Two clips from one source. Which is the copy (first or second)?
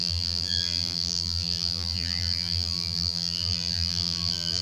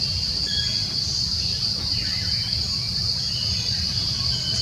first